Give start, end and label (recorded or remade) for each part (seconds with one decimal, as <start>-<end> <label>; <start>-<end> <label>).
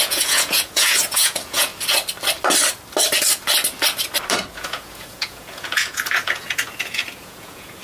0.0-1.7 remade; 1.7-4.5 recorded; 4.5-7.8 remade